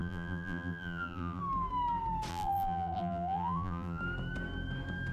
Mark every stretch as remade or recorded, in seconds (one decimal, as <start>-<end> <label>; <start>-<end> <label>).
0.0-1.4 remade; 1.4-2.3 recorded; 2.3-4.0 remade; 4.0-5.1 recorded